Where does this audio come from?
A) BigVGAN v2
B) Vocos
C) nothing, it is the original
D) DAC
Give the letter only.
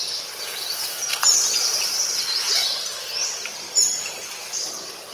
C